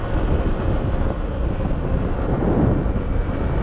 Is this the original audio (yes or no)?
yes